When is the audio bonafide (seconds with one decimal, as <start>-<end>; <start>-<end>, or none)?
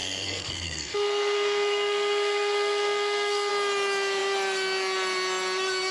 3.5-5.9